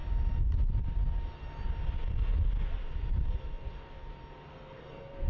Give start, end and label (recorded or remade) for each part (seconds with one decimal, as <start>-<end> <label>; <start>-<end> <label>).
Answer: 0.0-4.5 recorded; 4.5-5.3 remade